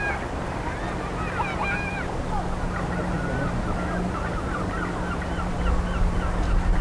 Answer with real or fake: real